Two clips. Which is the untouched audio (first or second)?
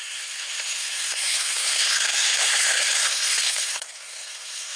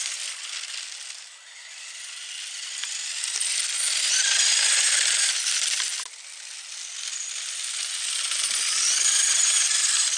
second